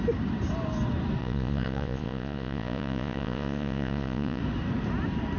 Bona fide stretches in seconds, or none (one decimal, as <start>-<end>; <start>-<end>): 0.0-1.2; 4.4-5.4